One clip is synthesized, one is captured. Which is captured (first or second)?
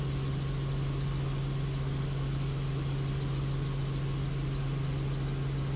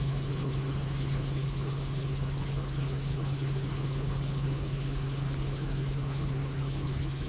first